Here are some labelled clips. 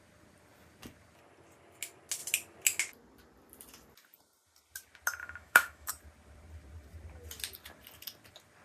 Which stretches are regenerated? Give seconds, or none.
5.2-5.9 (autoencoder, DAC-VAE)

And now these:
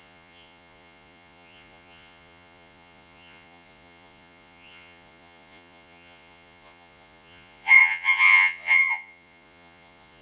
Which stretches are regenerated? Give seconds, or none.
0.0-10.2 (vocoder, Vocos)

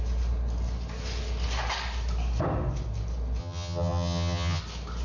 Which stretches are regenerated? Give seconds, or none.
3.4-4.6 (vocoder, HiFi-GAN)

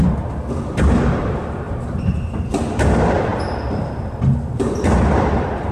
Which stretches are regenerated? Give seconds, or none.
1.2-2.1 (vocoder, BigVGAN v2)

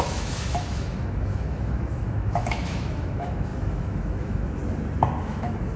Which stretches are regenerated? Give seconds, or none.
0.0-4.6 (autoencoder, DAC-VAE); 5.2-5.8

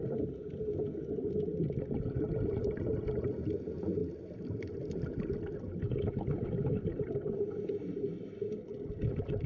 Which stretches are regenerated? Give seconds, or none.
none

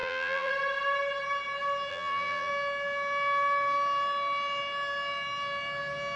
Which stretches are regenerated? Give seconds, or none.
0.0-0.5 (vocoder, BigVGAN v2); 1.9-2.5

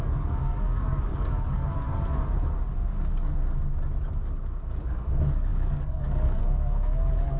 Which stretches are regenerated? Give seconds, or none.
0.0-1.6 (codec, DAC); 4.8-7.4